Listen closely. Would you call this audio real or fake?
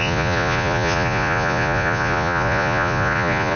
fake